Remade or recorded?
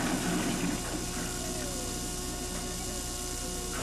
recorded